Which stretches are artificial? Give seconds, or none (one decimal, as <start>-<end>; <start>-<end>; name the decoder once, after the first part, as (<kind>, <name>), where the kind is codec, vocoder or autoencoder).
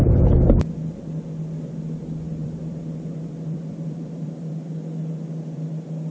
2.4-4.5 (vocoder, BigVGAN v2)